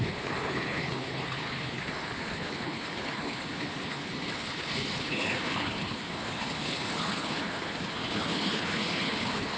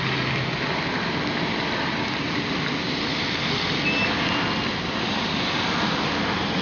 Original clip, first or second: second